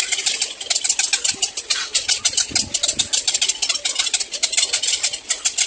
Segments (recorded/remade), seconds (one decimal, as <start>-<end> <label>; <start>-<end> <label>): 0.0-5.7 recorded